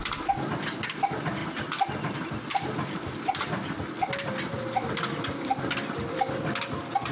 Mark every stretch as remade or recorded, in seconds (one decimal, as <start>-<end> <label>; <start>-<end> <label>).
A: 0.0-7.1 recorded